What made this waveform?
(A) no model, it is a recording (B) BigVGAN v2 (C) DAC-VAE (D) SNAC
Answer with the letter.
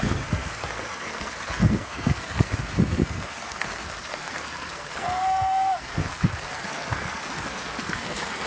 D